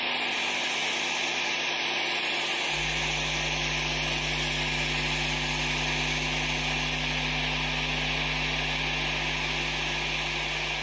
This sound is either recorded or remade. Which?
recorded